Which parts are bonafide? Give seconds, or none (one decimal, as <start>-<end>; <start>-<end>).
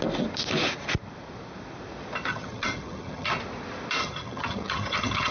0.0-2.3; 3.3-4.0